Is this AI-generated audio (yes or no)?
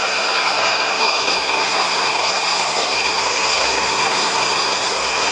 yes